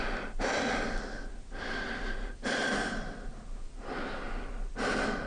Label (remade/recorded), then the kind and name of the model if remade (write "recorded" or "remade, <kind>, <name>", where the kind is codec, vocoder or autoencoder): recorded